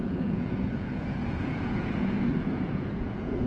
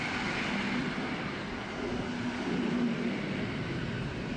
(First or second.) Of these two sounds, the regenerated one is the first